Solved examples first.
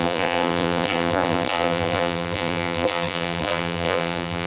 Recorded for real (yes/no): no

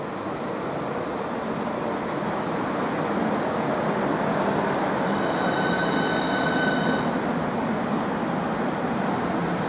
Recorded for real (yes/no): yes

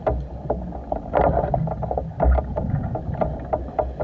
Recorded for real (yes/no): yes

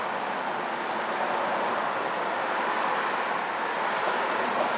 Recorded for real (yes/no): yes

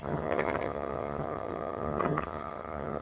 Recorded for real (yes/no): no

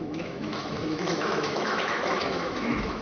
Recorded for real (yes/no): no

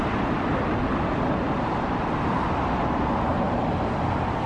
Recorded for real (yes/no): yes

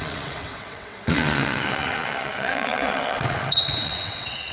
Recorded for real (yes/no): no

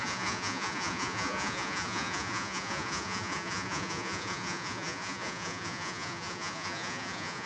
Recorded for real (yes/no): no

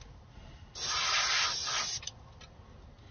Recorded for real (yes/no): yes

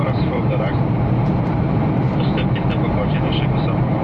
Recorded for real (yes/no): no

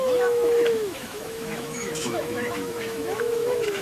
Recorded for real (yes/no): no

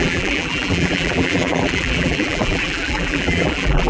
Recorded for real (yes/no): no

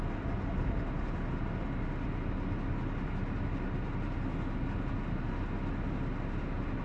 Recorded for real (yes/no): yes